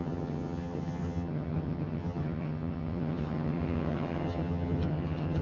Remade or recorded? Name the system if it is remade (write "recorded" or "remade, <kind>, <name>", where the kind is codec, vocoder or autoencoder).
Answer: remade, vocoder, HiFi-GAN